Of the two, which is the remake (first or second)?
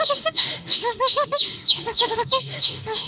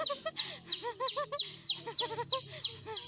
first